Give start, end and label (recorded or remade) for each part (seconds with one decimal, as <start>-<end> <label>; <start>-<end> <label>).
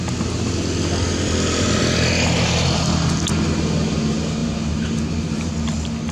0.0-4.4 recorded; 4.4-5.5 remade; 5.5-6.1 recorded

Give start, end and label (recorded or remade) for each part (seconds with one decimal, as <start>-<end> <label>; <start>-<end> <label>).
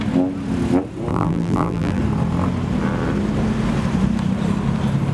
0.0-1.1 recorded; 1.1-2.0 remade; 2.0-5.1 recorded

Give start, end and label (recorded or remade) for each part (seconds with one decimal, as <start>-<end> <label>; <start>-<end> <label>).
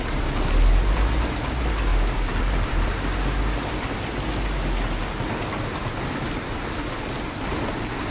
0.0-1.9 recorded; 1.9-2.9 remade; 2.9-8.1 recorded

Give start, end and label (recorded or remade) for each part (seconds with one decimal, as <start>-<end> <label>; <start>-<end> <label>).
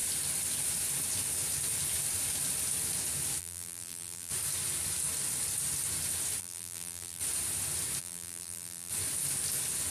0.0-3.4 recorded; 3.4-4.3 remade; 4.3-6.4 recorded; 6.4-7.2 remade; 7.2-8.0 recorded; 8.0-8.9 remade; 8.9-9.9 recorded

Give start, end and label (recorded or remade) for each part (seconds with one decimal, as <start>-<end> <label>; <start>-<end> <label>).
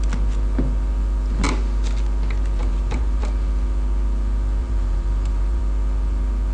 0.0-2.6 recorded; 2.6-3.2 remade; 3.2-4.6 recorded; 4.6-5.6 remade; 5.6-6.5 recorded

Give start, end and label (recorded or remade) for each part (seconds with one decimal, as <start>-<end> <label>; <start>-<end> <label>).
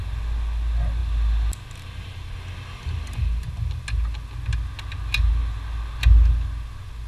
0.0-7.1 recorded